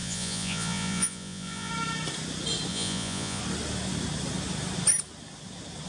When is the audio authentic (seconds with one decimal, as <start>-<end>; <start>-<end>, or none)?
1.7-2.7; 3.4-5.9